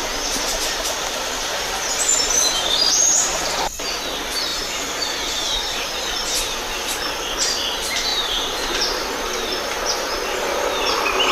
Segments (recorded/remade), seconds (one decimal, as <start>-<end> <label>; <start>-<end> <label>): 0.0-0.6 remade; 0.6-2.1 recorded; 2.1-3.4 remade; 3.4-4.5 recorded; 4.5-6.1 remade; 6.1-8.1 recorded; 8.1-8.8 remade; 8.8-11.3 recorded